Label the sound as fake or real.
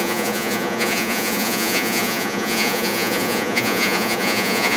fake